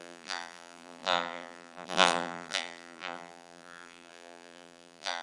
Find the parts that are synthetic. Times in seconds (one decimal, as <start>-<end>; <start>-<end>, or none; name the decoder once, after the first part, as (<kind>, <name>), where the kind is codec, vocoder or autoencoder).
0.0-5.2 (vocoder, BigVGAN v2)